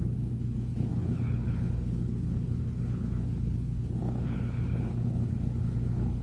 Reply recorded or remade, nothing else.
remade